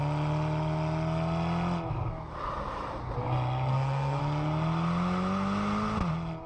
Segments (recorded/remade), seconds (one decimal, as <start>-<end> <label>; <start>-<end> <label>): 0.0-3.7 recorded; 3.7-4.2 remade; 4.2-6.5 recorded